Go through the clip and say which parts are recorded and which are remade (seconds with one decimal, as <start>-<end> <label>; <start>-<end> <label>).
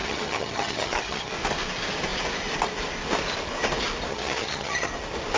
0.0-1.3 remade; 1.3-4.1 recorded; 4.1-4.9 remade; 4.9-5.4 recorded